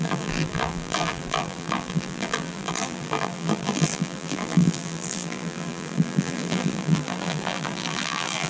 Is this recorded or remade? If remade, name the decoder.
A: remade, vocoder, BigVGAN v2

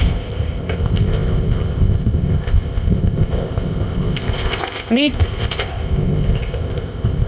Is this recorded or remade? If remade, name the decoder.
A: remade, codec, ZipCodec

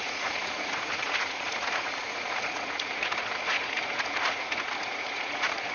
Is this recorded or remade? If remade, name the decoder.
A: remade, vocoder, Vocos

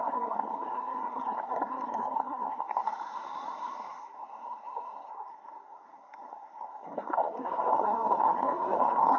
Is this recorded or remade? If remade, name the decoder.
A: remade, codec, SNAC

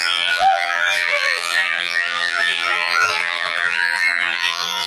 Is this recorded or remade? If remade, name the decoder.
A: remade, vocoder, BigVGAN v2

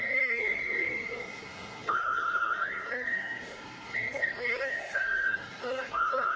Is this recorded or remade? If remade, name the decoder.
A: remade, codec, SNAC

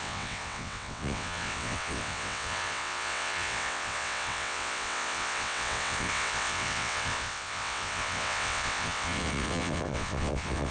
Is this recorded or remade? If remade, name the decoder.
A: remade, vocoder, WaveNeXt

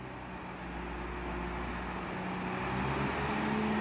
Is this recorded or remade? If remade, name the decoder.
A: recorded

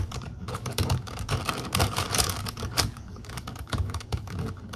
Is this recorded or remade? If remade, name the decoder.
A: remade, codec, DAC